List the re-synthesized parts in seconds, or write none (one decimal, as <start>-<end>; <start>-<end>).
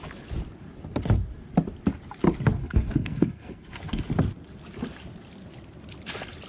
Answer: 2.6-4.0